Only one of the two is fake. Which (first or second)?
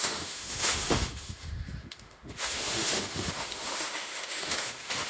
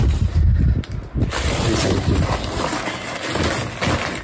first